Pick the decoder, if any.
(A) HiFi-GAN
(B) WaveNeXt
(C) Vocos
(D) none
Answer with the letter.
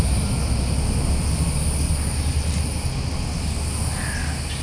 D